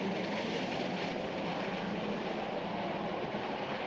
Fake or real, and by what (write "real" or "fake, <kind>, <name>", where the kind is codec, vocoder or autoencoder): real